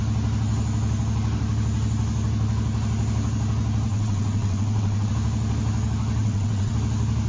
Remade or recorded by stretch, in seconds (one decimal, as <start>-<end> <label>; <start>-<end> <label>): 0.0-3.9 recorded; 3.9-5.1 remade; 5.1-6.2 recorded; 6.2-6.7 remade; 6.7-7.3 recorded